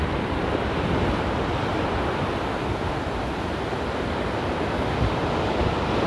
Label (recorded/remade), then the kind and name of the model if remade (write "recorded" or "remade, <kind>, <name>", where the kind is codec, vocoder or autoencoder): recorded